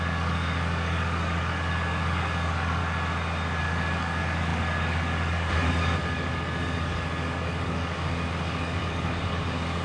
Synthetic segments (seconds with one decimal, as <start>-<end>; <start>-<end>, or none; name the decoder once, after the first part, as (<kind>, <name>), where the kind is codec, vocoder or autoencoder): 0.0-2.8 (codec, DAC); 3.6-9.8